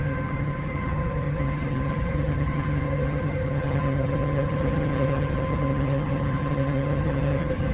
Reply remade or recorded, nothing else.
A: remade